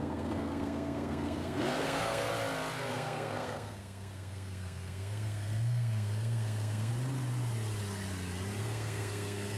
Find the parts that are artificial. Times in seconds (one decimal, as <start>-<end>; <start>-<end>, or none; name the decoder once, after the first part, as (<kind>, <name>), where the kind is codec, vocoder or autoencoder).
0.0-2.3 (codec, SNAC); 2.9-6.9; 8.6-9.6